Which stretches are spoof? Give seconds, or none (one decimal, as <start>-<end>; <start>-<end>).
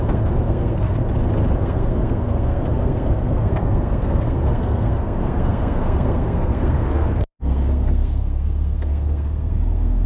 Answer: 0.0-1.0; 1.6-10.1